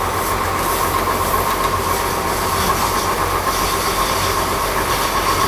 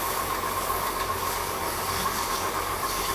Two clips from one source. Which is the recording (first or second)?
first